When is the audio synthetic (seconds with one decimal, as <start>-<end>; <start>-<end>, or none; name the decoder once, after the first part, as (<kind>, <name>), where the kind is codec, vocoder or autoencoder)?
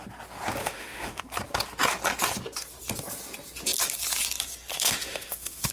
0.6-1.2 (autoencoder, DAC-VAE); 4.7-5.7